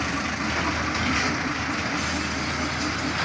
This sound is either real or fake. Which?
real